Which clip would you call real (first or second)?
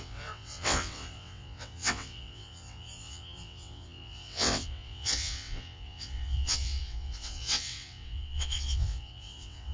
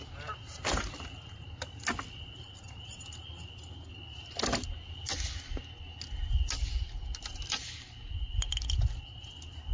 second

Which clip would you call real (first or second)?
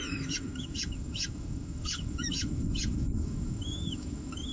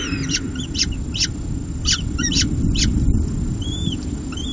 second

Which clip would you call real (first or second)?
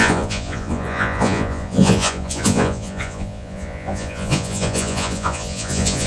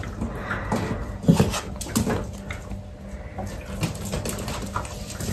second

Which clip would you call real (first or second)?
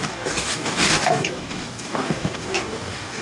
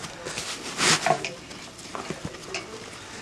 second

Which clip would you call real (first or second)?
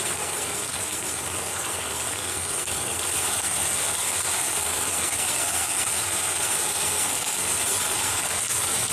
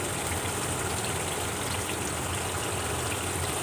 second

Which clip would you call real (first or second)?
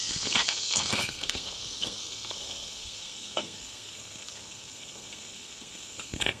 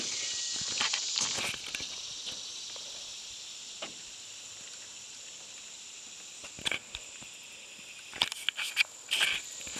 second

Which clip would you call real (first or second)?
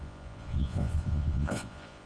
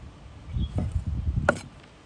second